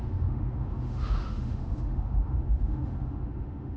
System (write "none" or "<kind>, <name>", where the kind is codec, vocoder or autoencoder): autoencoder, DAC-VAE